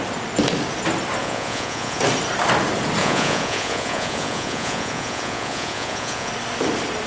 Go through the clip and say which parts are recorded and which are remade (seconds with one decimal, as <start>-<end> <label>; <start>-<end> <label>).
0.0-1.2 recorded; 1.2-2.0 remade; 2.0-3.0 recorded; 3.0-6.3 remade; 6.3-7.1 recorded